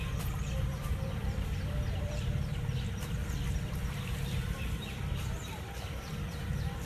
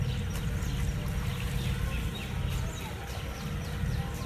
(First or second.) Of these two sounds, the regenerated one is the first